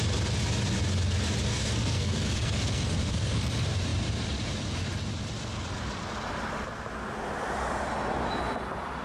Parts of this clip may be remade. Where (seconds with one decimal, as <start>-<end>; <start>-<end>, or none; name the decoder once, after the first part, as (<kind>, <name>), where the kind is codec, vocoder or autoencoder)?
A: 1.5-3.5 (codec, SNAC)